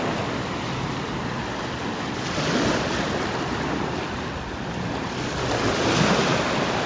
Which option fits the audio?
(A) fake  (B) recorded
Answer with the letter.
B